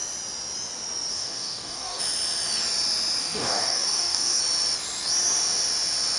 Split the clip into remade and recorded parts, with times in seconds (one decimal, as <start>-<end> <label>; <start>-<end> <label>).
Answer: 0.0-1.1 recorded; 1.1-2.0 remade; 2.0-3.2 recorded; 3.2-4.4 remade; 4.4-6.2 recorded